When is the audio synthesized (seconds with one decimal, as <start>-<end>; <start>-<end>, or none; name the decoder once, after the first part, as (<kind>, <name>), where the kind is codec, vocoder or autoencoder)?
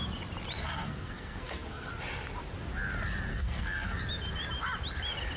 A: 0.6-1.9 (codec, SNAC); 3.3-4.0